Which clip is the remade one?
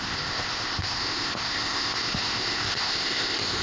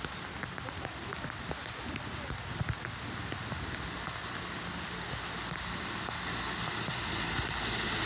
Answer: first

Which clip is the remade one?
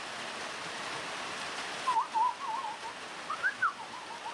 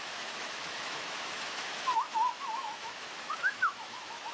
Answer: second